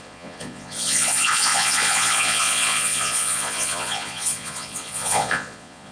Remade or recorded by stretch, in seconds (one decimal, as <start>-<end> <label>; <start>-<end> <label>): 0.0-5.9 remade